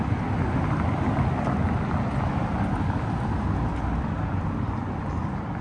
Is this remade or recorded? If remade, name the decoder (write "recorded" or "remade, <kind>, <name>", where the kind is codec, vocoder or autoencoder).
recorded